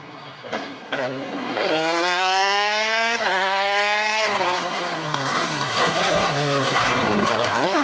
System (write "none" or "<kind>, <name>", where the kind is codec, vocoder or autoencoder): codec, SNAC